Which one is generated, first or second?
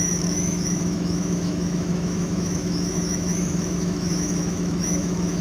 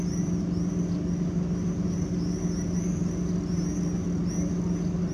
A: first